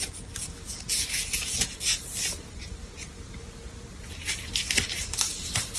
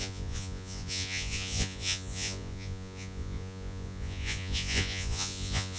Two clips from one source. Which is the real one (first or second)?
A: first